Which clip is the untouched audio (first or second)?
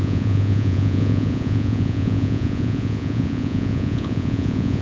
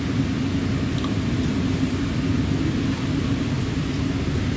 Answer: second